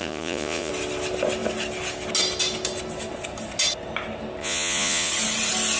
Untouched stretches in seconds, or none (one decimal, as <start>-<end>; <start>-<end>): 0.7-4.4; 5.1-5.8